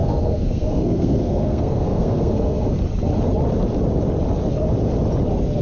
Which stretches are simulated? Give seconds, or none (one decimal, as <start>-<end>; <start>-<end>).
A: 0.0-2.7